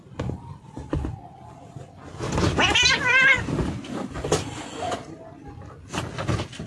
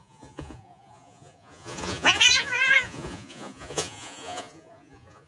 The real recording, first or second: first